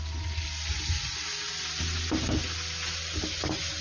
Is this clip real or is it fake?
real